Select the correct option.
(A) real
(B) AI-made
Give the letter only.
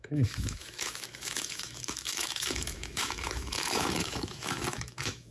B